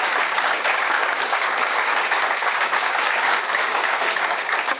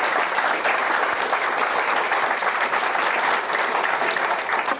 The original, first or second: second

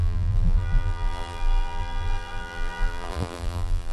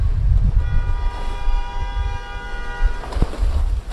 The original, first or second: second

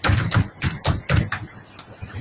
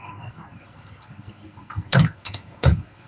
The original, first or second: first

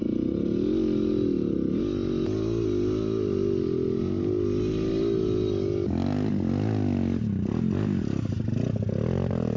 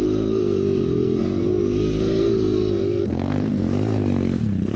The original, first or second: first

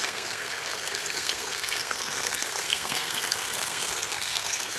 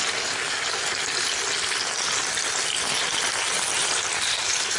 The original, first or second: second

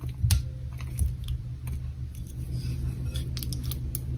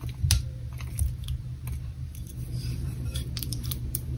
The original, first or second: first